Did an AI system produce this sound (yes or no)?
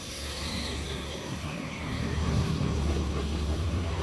yes